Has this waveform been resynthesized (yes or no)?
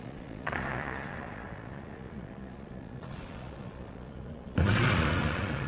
yes